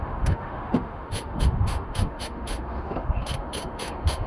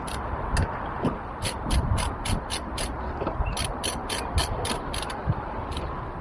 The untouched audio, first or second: second